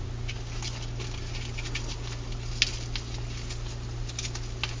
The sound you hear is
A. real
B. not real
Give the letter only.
A